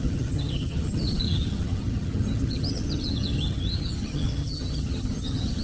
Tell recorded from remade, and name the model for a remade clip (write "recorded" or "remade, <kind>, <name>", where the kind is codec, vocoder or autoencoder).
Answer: remade, vocoder, HiFi-GAN